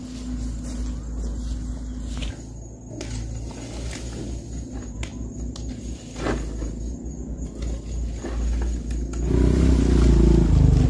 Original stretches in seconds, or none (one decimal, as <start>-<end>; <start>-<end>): 0.0-10.9